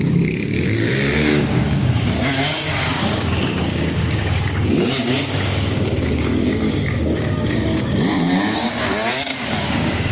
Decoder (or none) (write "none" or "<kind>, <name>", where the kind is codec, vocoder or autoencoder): codec, DAC